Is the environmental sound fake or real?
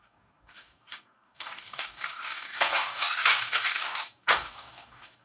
fake